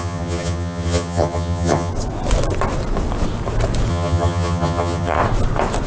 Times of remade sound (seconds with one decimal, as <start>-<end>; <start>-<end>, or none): 0.0-1.9; 3.9-5.2